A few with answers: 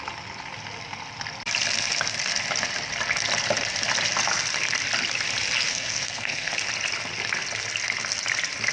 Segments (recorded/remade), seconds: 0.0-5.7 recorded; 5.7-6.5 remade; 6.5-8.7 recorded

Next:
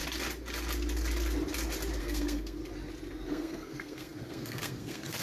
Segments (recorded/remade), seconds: 0.0-2.0 recorded; 2.0-2.6 remade; 2.6-3.3 recorded; 3.3-5.2 remade

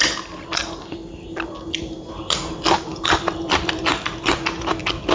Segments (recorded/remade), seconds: 0.0-0.6 recorded; 0.6-1.8 remade; 1.8-2.9 recorded; 2.9-3.8 remade; 3.8-5.1 recorded

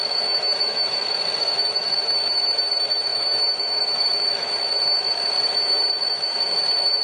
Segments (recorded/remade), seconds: 0.0-7.0 remade

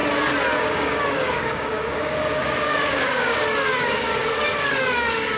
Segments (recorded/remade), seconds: 0.0-0.6 recorded; 0.6-5.4 remade